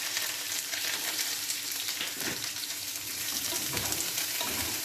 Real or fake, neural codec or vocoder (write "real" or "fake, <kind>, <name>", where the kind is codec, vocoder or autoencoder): fake, vocoder, BigVGAN v2